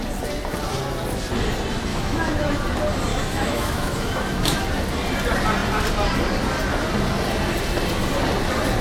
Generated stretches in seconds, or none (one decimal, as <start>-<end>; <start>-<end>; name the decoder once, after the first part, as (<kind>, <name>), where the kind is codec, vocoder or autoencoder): 1.9-2.6 (autoencoder, DAC-VAE); 3.1-4.6